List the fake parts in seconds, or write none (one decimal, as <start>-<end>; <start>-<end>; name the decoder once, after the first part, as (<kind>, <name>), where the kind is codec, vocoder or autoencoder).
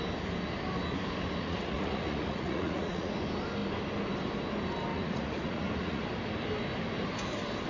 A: 1.4-3.1 (vocoder, Vocos); 4.9-6.0